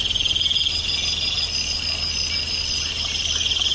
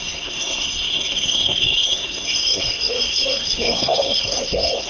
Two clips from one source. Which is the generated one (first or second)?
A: second